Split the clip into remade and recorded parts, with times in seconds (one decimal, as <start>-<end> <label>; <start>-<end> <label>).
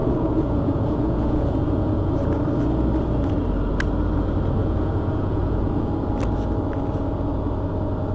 0.0-2.4 remade; 2.4-4.6 recorded; 4.6-5.9 remade; 5.9-8.1 recorded